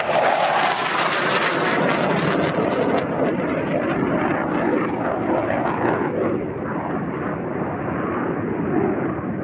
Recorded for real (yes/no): yes